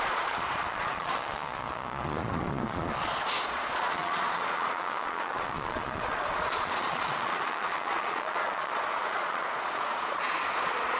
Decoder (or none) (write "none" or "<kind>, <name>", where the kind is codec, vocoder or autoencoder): vocoder, Vocos